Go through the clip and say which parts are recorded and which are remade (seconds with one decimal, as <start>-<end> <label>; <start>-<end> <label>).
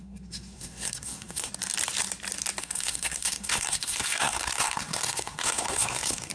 0.0-1.5 remade; 1.5-2.6 recorded; 2.6-6.3 remade